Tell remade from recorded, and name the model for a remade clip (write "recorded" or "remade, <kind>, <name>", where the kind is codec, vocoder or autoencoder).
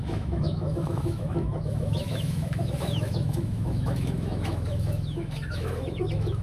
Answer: remade, autoencoder, DAC-VAE